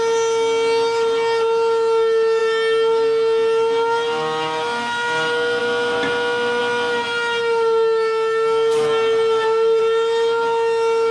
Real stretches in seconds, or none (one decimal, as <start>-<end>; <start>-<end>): 0.0-11.1